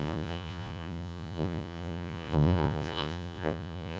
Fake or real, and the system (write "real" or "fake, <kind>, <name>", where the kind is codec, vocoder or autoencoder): fake, vocoder, Vocos